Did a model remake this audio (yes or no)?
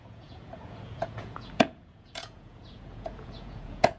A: yes